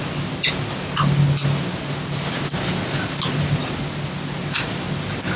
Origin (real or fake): real